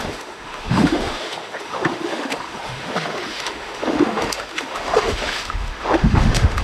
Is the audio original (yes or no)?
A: no